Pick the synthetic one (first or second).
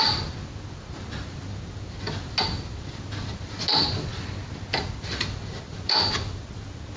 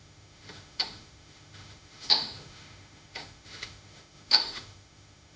second